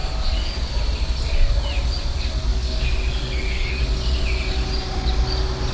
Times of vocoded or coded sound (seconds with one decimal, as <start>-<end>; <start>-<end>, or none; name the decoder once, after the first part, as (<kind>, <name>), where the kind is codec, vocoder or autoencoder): 0.0-0.8 (codec, DAC); 2.5-3.8